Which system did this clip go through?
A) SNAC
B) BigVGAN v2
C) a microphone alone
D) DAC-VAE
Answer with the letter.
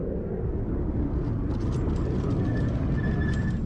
C